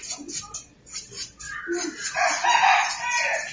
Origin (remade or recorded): recorded